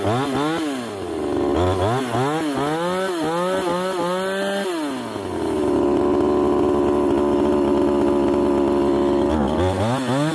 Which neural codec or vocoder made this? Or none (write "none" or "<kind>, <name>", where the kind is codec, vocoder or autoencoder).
none